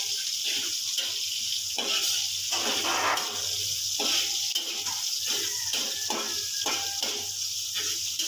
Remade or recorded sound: recorded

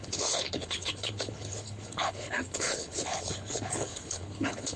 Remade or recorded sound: remade